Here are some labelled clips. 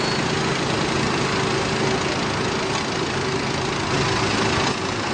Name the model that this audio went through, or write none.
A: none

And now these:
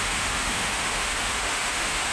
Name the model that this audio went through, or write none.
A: autoencoder, DAC-VAE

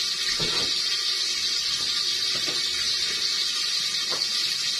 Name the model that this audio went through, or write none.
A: none